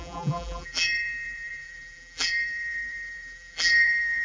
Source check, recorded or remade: remade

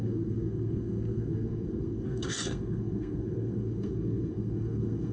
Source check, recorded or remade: remade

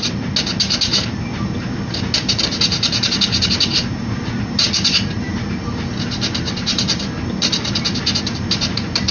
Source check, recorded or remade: recorded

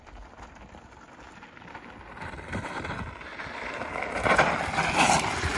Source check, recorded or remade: recorded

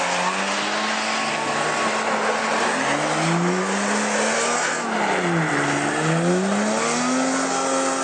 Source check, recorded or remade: recorded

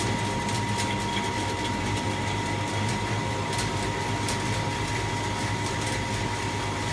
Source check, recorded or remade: recorded